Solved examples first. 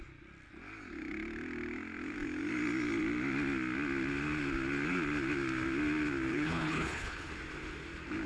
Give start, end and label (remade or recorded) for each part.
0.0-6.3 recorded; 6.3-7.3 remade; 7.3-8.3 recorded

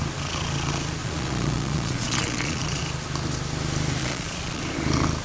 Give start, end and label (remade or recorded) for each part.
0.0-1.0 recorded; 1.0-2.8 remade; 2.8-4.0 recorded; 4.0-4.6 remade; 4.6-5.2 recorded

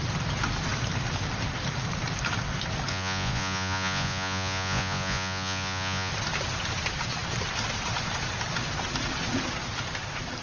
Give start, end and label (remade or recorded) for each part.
0.0-2.9 recorded; 2.9-6.1 remade; 6.1-10.4 recorded

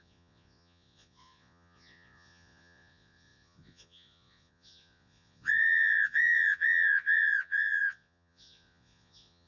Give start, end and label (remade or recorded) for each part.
0.0-9.5 remade

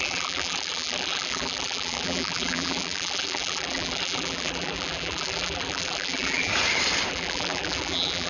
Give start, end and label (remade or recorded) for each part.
0.0-6.5 remade; 6.5-7.1 recorded; 7.1-8.3 remade

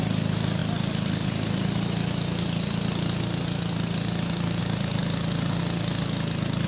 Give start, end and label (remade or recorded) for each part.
0.0-6.7 recorded